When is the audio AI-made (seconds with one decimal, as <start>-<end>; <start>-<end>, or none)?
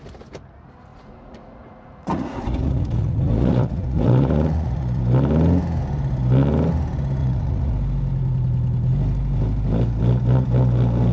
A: 0.9-5.0; 7.2-7.7